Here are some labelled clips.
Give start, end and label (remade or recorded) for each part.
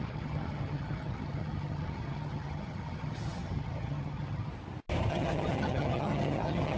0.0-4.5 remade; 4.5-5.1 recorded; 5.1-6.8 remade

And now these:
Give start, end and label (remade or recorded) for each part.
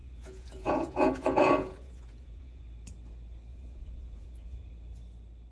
0.0-2.6 remade; 2.6-3.5 recorded; 3.5-4.6 remade; 4.6-5.5 recorded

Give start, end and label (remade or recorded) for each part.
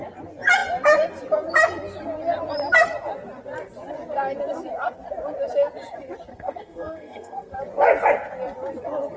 0.0-6.3 recorded; 6.3-7.6 remade; 7.6-9.2 recorded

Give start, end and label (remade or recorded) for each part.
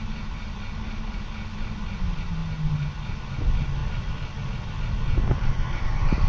0.0-6.3 recorded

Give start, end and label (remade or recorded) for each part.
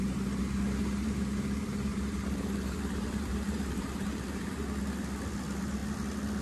0.0-0.8 recorded; 0.8-4.6 remade; 4.6-6.4 recorded